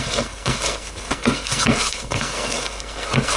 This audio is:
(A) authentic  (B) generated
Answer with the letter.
B